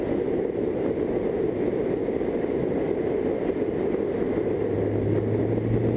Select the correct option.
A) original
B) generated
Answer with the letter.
A